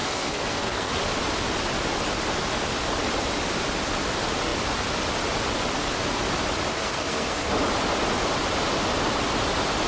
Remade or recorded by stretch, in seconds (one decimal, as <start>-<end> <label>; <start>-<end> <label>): 0.0-0.9 remade; 0.9-6.7 recorded; 6.7-7.5 remade; 7.5-9.9 recorded